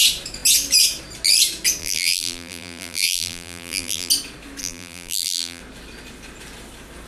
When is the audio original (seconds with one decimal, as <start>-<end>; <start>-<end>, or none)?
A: 0.0-1.8; 4.1-4.6; 5.6-7.1